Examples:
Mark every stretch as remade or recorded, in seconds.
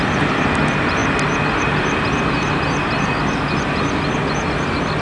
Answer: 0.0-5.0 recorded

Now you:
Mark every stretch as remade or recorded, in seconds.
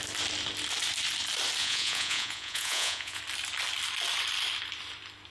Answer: 0.0-1.6 recorded; 1.6-3.2 remade; 3.2-5.3 recorded